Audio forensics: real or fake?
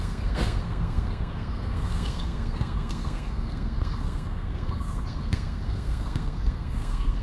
fake